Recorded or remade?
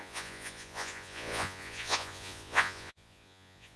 remade